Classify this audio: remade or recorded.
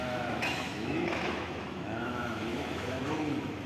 remade